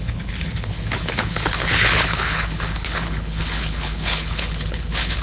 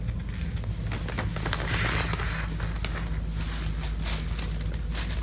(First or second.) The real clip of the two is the second